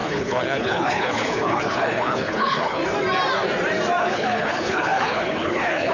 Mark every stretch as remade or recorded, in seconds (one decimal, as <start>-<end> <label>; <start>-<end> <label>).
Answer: 0.0-2.8 remade; 2.8-4.0 recorded; 4.0-5.9 remade